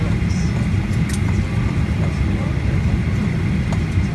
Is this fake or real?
real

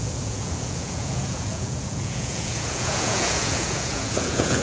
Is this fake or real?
fake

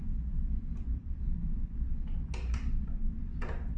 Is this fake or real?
real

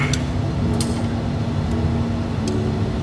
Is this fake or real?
real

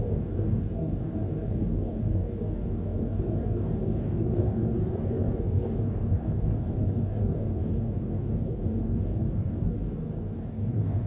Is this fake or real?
fake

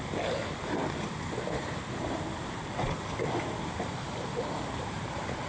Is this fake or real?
real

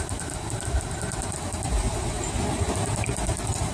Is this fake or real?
real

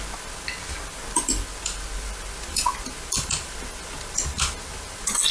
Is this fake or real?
real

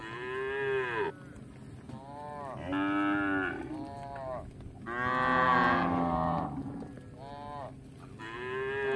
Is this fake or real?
real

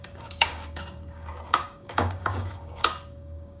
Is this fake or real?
fake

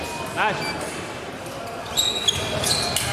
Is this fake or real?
real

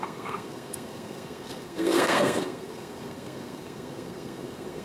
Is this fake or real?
fake